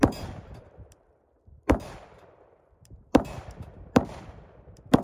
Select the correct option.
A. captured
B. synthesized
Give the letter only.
B